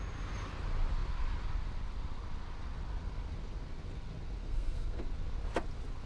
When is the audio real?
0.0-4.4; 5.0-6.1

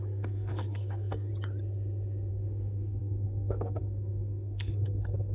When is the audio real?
1.3-2.3

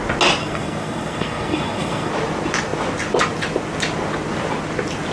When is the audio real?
0.0-0.4; 2.1-5.1

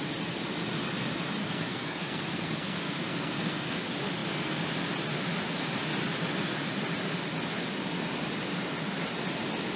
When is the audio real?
0.0-1.4; 3.8-9.8

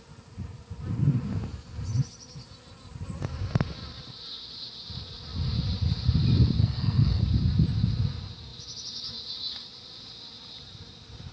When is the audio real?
0.0-6.6; 7.2-11.3